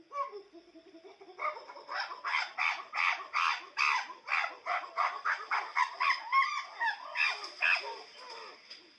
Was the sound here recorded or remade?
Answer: recorded